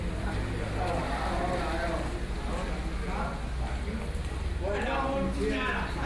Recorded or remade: recorded